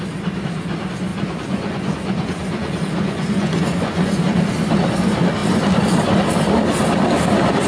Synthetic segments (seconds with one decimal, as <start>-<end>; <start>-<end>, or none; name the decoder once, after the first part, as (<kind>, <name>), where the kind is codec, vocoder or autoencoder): 1.1-4.2 (vocoder, Vocos)